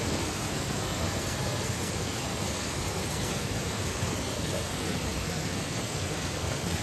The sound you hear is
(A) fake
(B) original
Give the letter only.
A